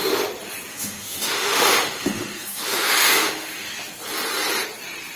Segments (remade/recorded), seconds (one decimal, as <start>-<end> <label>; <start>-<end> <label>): 0.0-0.7 recorded; 0.7-3.7 remade; 3.7-5.2 recorded